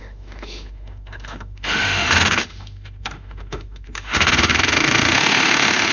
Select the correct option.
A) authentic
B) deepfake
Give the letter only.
B